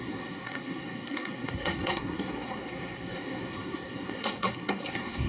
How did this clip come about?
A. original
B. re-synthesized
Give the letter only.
B